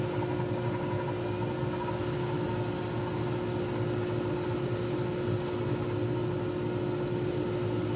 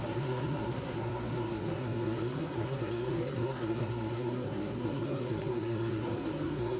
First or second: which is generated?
second